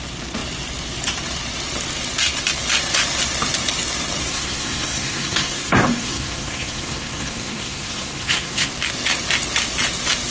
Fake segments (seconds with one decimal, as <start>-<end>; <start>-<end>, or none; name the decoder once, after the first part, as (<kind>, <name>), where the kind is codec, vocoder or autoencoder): 4.2-8.7 (codec, SNAC)